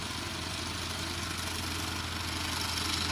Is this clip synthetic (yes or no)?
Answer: no